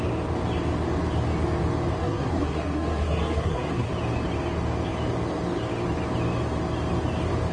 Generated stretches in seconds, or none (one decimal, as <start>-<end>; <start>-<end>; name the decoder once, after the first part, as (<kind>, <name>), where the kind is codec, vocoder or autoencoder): 2.0-3.9 (codec, SNAC)